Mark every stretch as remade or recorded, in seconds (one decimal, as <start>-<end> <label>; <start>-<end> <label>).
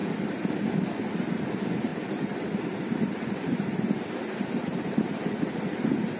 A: 0.0-6.2 recorded